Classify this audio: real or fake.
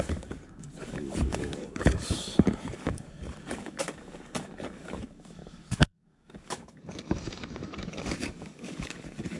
fake